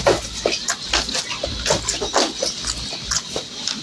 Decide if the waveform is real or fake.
real